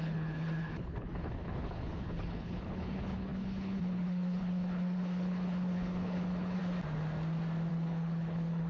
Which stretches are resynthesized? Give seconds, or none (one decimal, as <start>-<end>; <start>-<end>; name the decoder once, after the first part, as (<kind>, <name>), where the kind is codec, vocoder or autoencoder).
0.0-6.6 (codec, HILCodec); 7.7-8.7